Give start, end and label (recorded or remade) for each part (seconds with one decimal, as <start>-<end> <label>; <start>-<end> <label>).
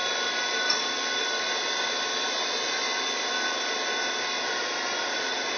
0.0-5.6 recorded